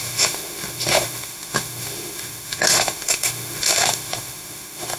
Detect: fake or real fake